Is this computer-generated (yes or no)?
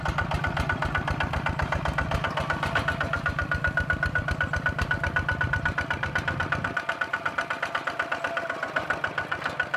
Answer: no